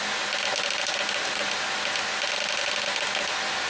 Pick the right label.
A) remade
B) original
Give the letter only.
B